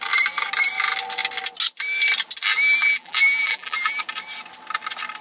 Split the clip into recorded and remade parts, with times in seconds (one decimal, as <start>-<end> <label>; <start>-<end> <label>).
0.0-2.5 recorded; 2.5-4.0 remade; 4.0-5.2 recorded